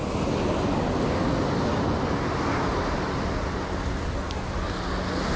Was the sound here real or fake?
real